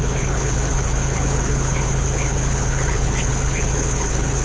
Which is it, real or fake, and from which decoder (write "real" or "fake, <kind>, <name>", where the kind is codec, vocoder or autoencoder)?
fake, codec, HILCodec